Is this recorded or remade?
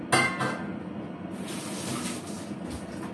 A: recorded